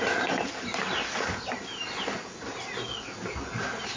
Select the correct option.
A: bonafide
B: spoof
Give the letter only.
A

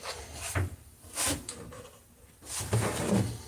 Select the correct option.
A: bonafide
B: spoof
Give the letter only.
A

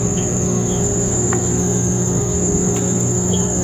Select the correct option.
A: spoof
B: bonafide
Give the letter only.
A